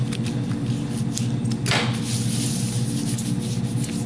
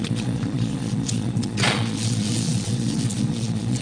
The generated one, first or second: second